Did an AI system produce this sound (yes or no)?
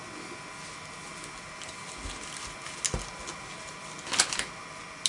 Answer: no